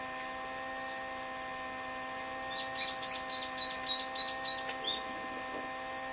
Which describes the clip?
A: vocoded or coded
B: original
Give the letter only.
B